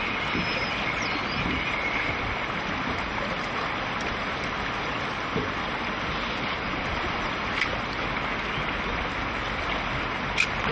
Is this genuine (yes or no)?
yes